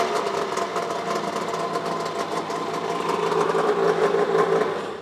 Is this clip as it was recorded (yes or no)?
yes